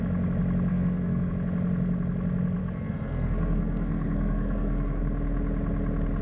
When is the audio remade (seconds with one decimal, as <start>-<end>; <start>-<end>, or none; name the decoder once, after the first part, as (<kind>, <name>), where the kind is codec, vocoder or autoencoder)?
0.7-1.3 (codec, SNAC); 2.6-5.0

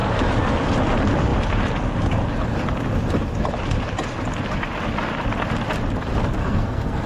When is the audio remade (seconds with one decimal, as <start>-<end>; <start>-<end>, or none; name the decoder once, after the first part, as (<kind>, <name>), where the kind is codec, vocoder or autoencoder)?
6.4-7.1 (codec, SNAC)

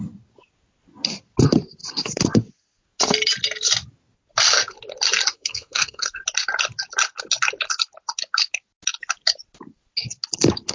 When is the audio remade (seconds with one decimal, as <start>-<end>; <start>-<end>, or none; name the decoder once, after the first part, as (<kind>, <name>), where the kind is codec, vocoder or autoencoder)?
5.3-6.2 (codec, SNAC)

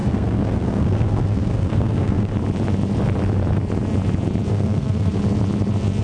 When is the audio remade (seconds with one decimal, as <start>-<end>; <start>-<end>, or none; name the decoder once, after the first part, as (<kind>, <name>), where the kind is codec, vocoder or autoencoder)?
0.0-2.3 (codec, SNAC); 4.5-5.2

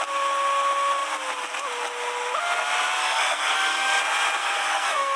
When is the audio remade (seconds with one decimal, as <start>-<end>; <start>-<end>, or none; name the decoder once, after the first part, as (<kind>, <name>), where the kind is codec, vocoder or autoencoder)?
3.0-4.0 (codec, SNAC); 4.4-5.2